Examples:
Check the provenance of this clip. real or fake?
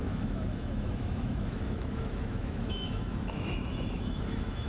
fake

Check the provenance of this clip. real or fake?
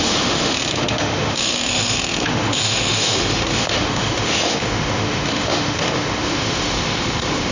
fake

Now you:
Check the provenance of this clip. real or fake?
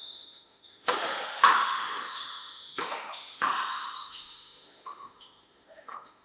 fake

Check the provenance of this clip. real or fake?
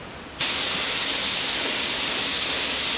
real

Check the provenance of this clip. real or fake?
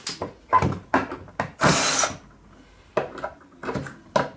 real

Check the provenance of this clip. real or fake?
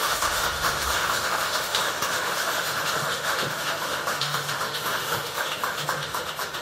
fake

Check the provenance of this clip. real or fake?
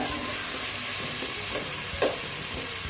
real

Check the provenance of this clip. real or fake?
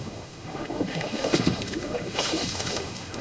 fake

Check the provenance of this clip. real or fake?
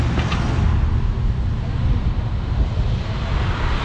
real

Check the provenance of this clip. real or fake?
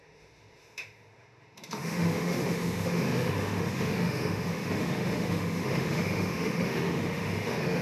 fake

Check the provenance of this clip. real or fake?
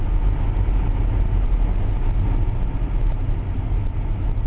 real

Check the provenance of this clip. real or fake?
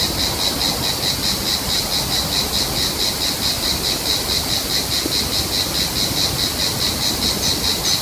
real